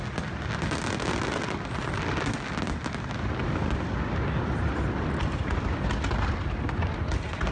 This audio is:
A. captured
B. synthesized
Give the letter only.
A